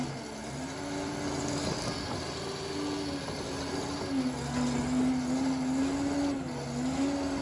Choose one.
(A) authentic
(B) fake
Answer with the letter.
A